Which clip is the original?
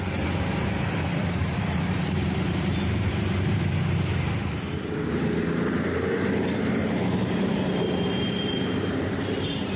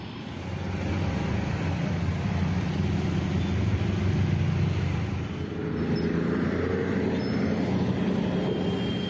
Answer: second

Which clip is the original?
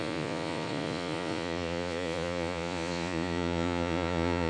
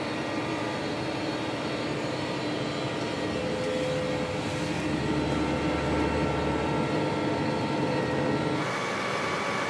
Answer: second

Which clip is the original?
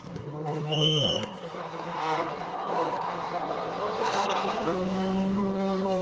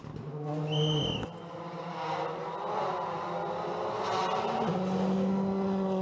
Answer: second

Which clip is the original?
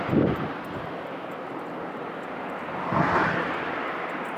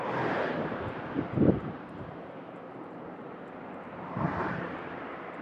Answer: first